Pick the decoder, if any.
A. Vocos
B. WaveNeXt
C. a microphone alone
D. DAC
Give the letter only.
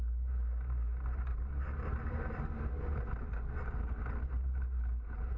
C